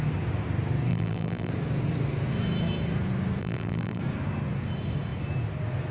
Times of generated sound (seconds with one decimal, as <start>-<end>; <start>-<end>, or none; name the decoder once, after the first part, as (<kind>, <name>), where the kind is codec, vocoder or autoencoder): 0.9-1.5 (vocoder, BigVGAN v2); 3.4-4.0